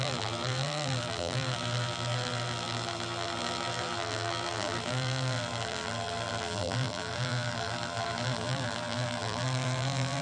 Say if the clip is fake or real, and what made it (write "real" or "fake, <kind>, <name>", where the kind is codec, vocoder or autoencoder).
fake, vocoder, BigVGAN v2